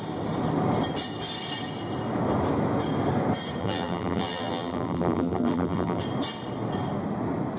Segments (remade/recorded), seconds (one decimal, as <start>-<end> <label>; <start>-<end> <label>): 0.0-3.6 recorded; 3.6-6.0 remade; 6.0-7.6 recorded